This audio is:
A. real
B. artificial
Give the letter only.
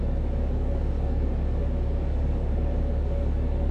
B